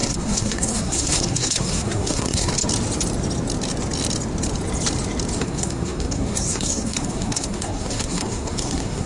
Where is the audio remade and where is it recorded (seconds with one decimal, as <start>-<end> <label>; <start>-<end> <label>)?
0.0-2.5 remade; 2.5-5.4 recorded; 5.4-9.1 remade